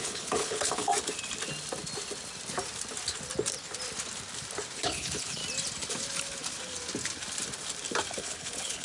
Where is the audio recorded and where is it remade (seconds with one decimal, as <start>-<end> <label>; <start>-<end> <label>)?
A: 0.0-0.9 remade; 0.9-4.8 recorded; 4.8-5.4 remade; 5.4-8.2 recorded; 8.2-8.8 remade